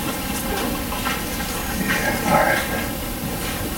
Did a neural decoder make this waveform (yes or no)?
no